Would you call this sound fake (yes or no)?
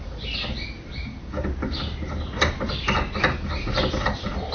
no